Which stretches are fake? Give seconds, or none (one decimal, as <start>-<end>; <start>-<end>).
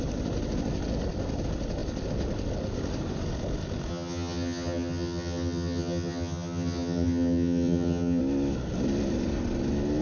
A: 3.9-8.2